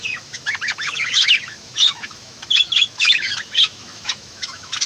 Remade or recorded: remade